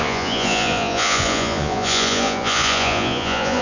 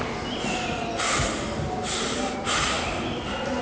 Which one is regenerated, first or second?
first